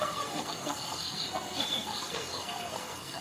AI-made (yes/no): yes